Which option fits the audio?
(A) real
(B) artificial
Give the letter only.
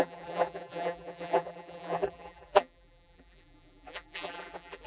B